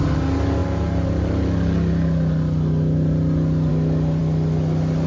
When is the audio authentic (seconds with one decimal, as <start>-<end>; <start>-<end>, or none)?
0.0-5.1